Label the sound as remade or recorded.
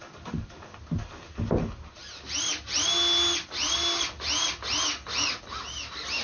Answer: recorded